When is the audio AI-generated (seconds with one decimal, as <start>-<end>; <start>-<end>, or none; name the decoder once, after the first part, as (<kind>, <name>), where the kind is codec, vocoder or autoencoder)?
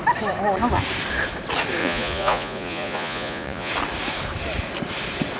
1.8-3.7 (vocoder, Vocos)